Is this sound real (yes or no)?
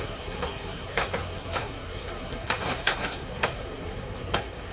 no